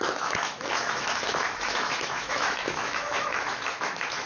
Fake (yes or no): yes